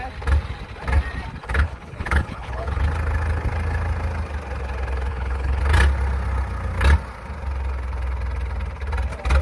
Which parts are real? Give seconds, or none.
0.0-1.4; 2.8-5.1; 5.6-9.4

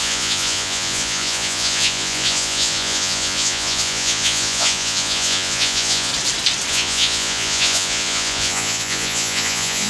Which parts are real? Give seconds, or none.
6.1-6.7

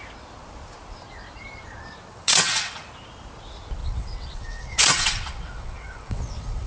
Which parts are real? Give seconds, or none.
0.0-2.1; 2.8-3.8

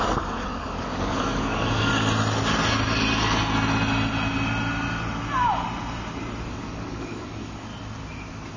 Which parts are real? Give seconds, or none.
1.9-6.5; 7.7-8.6

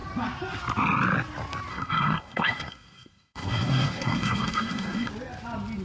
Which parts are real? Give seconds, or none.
0.0-1.7; 5.1-5.8

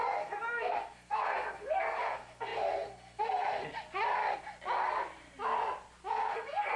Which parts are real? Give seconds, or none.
3.6-6.1

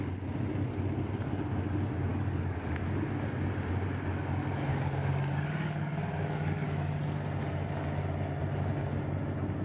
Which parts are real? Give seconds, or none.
0.0-2.1; 2.8-4.7; 7.0-9.6